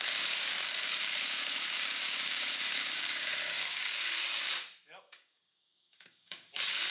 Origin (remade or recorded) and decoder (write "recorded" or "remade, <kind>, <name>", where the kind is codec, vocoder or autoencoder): remade, codec, DAC